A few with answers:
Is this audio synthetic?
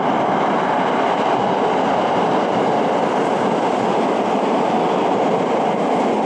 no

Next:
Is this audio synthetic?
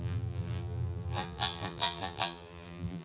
yes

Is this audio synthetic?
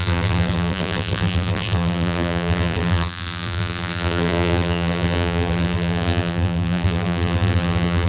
yes